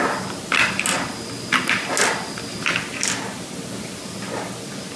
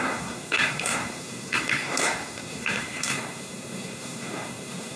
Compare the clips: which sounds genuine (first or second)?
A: first